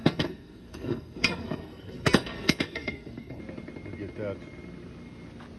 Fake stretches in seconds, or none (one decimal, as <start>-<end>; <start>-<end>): 0.0-3.4